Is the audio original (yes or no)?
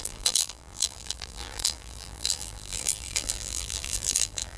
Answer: no